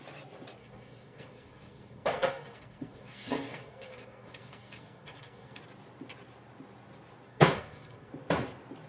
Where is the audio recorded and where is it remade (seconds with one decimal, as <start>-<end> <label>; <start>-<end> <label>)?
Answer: 0.0-0.6 recorded; 0.6-5.6 remade; 5.6-7.3 recorded; 7.3-8.1 remade; 8.1-8.9 recorded